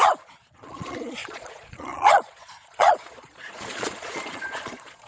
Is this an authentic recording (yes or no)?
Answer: no